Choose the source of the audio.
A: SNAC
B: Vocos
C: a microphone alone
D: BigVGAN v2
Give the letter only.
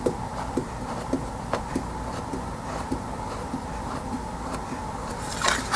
D